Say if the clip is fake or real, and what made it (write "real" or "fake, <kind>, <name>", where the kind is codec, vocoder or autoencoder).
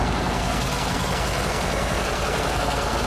fake, codec, SNAC